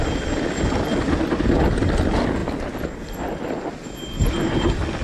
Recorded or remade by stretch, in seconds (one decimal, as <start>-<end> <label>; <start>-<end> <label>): 0.0-5.0 recorded